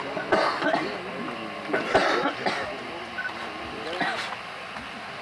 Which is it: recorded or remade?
recorded